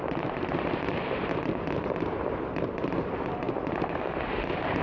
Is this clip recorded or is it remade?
remade